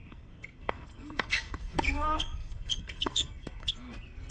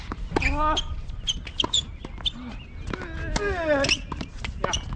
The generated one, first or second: first